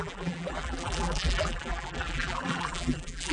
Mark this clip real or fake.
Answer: fake